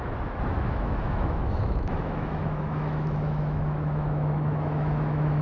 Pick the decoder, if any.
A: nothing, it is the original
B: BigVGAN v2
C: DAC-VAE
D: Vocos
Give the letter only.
C